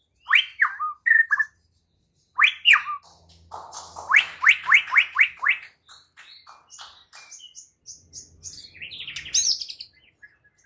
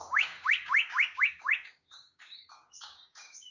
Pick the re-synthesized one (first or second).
second